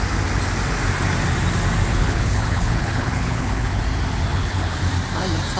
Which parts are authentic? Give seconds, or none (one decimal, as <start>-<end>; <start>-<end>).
0.0-1.9; 3.8-4.3; 4.9-5.6